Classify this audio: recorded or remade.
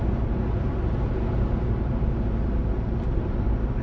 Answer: recorded